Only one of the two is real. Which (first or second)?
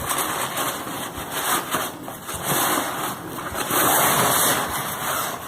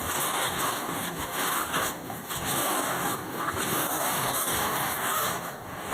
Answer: first